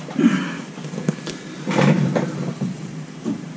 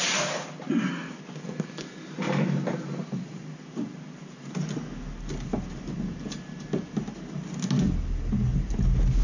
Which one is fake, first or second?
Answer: first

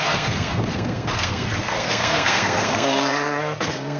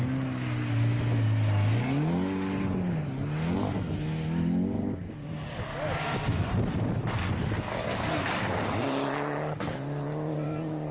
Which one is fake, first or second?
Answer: first